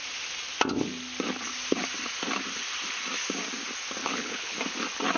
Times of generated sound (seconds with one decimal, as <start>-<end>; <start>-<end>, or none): 4.0-4.6